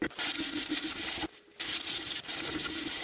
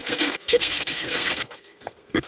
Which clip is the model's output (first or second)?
second